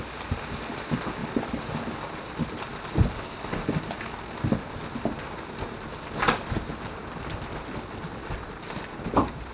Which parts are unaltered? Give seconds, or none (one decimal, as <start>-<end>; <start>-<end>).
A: 0.0-1.2; 4.0-9.5